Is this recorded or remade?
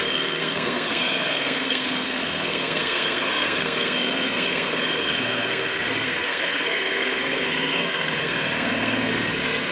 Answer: remade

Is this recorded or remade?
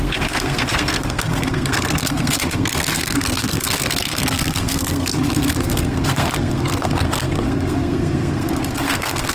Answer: remade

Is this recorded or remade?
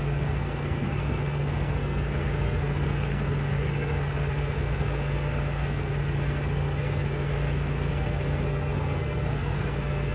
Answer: remade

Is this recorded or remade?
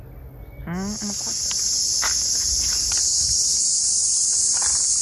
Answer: recorded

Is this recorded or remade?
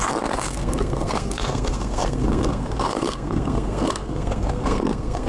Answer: remade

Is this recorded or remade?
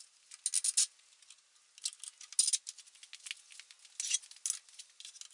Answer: recorded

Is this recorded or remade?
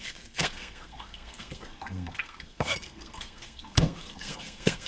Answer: remade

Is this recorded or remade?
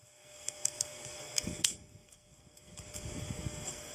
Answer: remade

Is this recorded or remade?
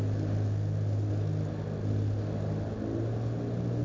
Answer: recorded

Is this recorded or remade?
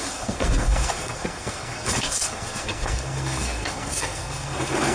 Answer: remade